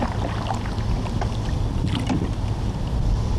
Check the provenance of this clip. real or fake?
real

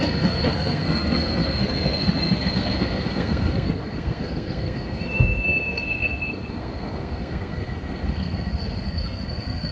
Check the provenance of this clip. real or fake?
fake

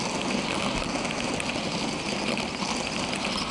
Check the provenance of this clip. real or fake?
real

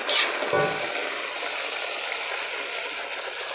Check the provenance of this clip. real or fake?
real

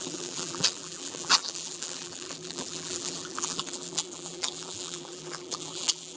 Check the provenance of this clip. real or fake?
fake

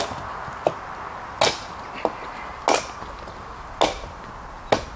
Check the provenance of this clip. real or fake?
real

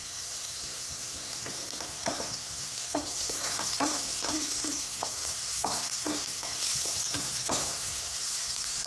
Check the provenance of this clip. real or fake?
fake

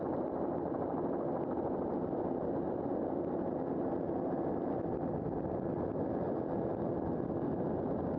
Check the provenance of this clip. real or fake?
real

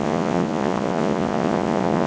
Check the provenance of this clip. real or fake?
fake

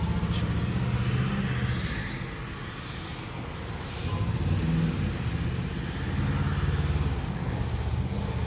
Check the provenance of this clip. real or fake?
real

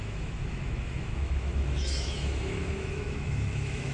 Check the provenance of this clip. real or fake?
fake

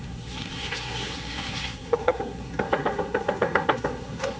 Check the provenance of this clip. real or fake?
fake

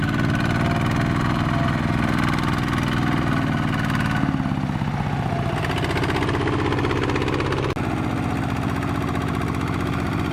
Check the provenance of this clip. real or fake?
real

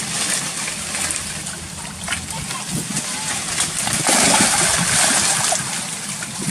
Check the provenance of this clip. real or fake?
real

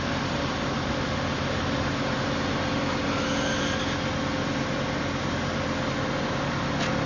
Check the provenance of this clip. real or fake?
real